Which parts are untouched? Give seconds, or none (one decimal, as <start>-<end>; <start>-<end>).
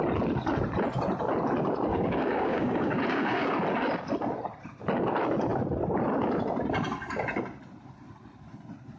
0.0-1.9; 3.5-9.0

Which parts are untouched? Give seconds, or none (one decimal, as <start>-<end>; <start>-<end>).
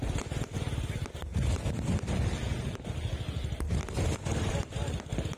0.0-5.4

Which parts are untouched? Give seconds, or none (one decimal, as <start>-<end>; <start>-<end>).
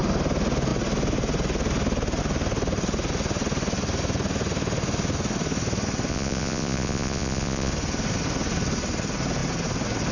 0.0-6.1; 7.7-10.1